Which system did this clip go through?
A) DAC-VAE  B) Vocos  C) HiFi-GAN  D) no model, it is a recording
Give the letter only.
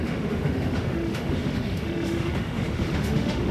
A